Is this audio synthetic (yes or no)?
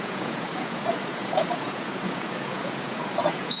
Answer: yes